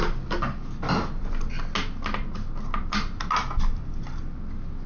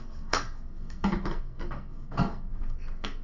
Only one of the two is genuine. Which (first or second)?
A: first